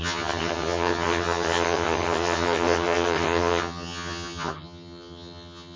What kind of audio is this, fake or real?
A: fake